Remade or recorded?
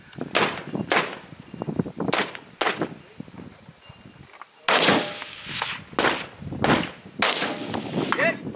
recorded